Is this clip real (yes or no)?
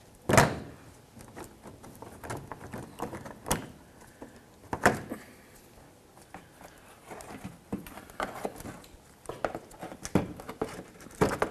yes